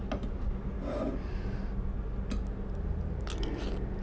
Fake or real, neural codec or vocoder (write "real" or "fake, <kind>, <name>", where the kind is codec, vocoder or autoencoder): real